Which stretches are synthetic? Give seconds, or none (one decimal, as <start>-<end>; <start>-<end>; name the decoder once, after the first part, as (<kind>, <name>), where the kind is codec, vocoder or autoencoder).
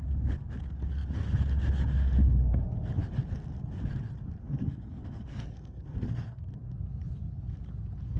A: 4.4-6.4 (codec, SNAC)